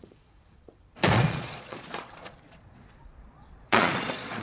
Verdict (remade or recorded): remade